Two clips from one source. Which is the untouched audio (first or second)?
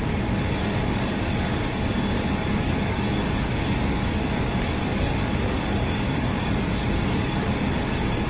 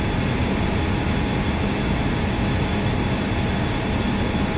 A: second